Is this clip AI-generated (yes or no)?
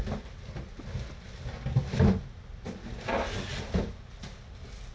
no